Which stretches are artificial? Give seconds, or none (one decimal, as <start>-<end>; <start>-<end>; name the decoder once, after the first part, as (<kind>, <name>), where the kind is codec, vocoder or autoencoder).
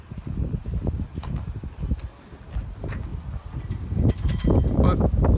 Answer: 3.1-4.1 (vocoder, BigVGAN v2)